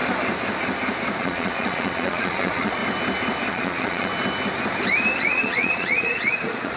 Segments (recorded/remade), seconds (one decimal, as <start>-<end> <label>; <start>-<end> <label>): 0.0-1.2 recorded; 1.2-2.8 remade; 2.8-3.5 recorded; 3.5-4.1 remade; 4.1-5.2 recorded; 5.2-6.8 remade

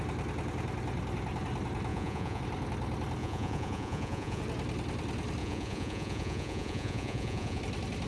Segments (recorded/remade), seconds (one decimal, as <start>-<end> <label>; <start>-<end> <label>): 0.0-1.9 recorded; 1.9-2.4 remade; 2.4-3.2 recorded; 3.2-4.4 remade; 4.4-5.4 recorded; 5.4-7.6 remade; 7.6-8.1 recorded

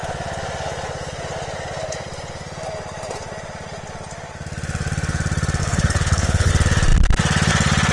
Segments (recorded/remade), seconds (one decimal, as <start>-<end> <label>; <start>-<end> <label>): 0.0-5.6 recorded; 5.6-6.5 remade; 6.5-7.9 recorded